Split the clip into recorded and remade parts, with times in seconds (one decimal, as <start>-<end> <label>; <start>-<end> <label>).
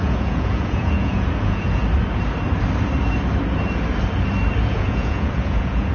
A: 0.0-1.8 remade; 1.8-4.6 recorded; 4.6-5.9 remade